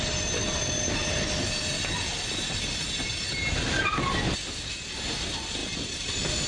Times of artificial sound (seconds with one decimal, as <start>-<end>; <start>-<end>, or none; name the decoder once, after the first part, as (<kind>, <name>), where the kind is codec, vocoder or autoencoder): none

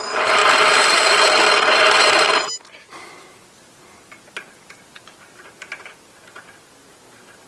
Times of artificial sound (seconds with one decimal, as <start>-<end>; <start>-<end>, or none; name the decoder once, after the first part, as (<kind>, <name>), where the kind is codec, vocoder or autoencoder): none

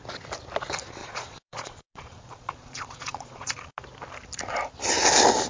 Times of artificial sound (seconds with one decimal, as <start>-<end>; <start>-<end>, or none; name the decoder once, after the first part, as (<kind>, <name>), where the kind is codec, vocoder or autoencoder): 1.0-3.7 (vocoder, Vocos)

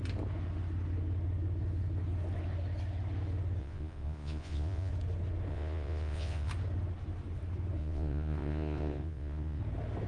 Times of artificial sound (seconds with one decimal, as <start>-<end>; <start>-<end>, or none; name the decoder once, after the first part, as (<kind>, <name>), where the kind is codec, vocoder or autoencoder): 3.6-4.9 (vocoder, Vocos); 5.5-6.5; 7.8-9.6

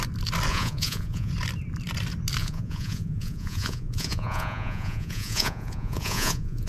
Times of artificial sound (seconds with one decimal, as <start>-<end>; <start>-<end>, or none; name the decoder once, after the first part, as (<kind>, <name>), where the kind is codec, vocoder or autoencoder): 0.5-1.3 (vocoder, Vocos); 2.4-6.7

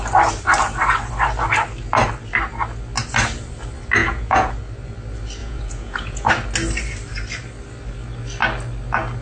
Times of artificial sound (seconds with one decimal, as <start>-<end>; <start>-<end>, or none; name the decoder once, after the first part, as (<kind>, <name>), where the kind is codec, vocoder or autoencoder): 4.0-4.5 (vocoder, Vocos); 5.4-6.3

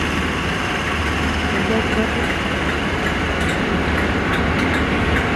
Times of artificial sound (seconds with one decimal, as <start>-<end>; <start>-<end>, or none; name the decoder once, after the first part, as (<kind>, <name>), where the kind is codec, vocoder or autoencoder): none